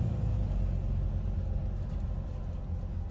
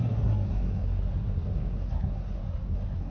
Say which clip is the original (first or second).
first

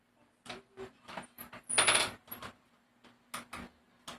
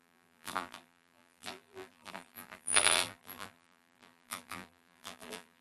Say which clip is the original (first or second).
first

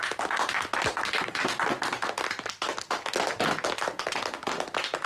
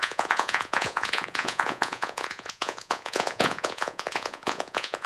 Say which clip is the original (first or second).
first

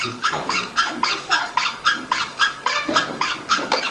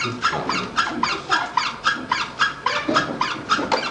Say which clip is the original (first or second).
second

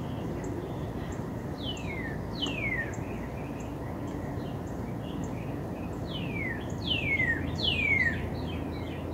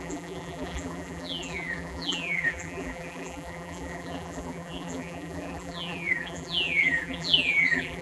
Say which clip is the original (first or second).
first